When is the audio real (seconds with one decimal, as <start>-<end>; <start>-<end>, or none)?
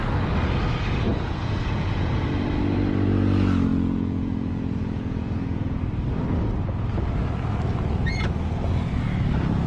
0.0-1.1; 2.1-3.7; 5.8-9.7